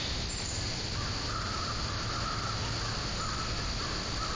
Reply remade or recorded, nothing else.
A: recorded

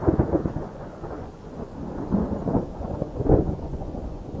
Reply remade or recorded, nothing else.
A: remade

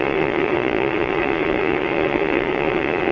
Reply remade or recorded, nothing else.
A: remade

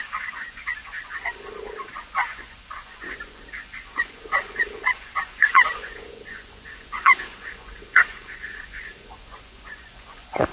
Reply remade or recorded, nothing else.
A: remade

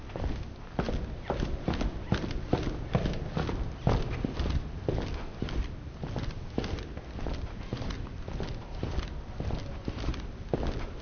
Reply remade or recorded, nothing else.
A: recorded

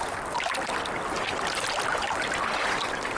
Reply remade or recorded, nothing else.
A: recorded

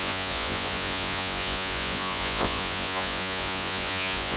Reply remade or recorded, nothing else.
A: remade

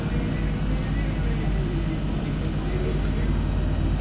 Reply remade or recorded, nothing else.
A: recorded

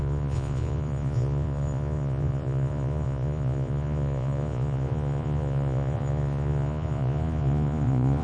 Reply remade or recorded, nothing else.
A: remade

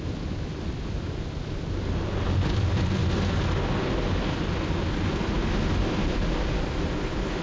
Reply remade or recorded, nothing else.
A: recorded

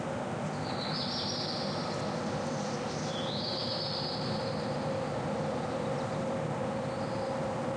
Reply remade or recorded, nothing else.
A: recorded